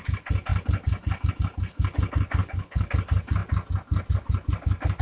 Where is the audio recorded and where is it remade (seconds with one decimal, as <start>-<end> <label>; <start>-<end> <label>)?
0.0-2.4 recorded; 2.4-2.9 remade; 2.9-5.0 recorded